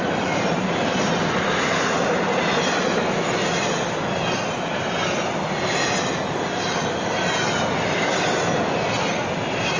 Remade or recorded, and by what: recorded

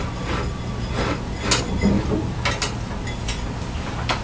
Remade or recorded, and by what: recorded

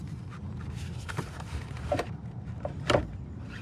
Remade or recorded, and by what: remade, vocoder, BigVGAN v2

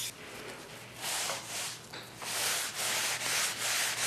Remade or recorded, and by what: recorded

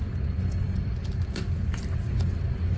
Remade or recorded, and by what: recorded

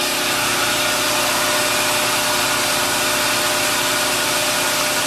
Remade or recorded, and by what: recorded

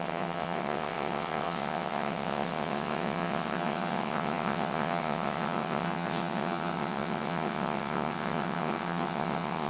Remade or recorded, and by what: remade, vocoder, WaveNeXt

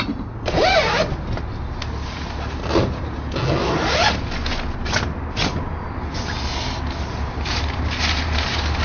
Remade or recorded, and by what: recorded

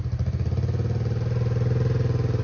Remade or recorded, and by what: recorded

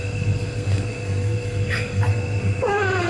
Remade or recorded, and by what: remade, codec, SNAC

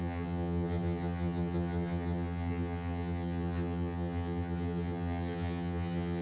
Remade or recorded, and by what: remade, vocoder, HiFi-GAN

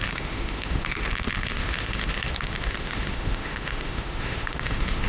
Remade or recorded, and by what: remade, autoencoder, DAC-VAE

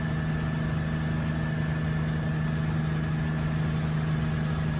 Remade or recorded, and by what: recorded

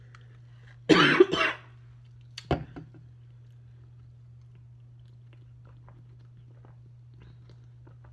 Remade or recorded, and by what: recorded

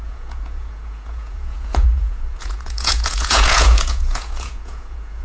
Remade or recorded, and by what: remade, vocoder, Vocos